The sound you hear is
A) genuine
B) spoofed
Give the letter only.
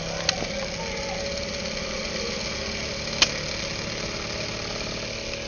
A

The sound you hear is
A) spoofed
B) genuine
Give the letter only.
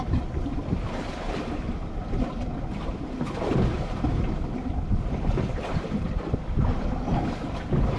B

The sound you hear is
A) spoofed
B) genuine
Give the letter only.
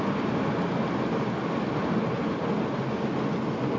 B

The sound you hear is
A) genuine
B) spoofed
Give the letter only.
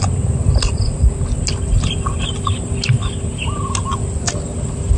A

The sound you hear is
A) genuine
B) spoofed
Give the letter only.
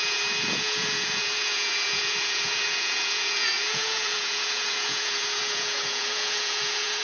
B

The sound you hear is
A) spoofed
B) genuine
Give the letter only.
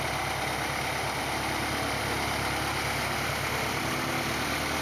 B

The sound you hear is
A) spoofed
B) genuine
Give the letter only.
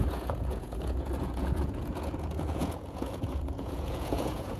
A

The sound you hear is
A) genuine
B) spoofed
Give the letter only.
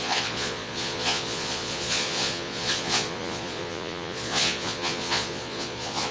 B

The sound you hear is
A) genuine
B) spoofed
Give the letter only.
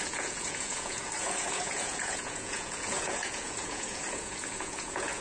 B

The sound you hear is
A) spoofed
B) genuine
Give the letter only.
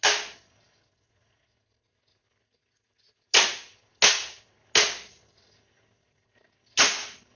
B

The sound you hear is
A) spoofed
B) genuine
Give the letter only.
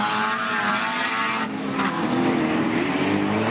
B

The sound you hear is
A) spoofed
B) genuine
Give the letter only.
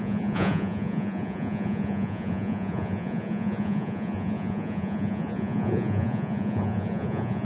A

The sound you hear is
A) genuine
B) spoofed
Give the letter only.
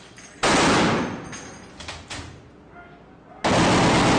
A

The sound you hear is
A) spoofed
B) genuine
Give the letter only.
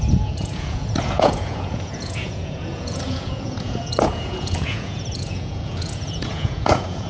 A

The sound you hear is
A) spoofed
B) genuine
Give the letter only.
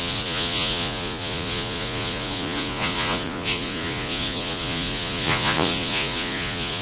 A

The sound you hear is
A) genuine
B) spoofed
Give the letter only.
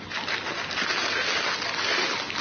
A